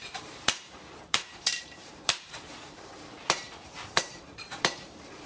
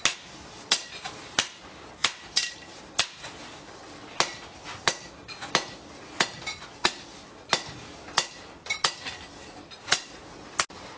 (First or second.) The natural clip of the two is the second